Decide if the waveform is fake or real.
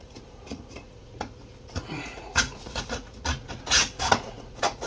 fake